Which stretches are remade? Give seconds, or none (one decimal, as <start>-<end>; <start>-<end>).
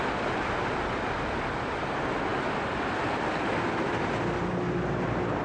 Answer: none